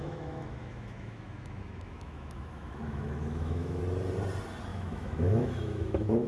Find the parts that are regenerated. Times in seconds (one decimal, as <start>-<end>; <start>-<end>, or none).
0.0-3.8; 4.7-6.3